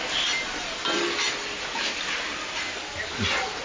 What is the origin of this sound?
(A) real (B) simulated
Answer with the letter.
A